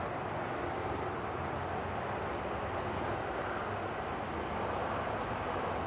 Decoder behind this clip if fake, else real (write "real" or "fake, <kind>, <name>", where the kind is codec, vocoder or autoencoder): real